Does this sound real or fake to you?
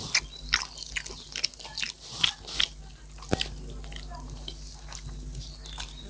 real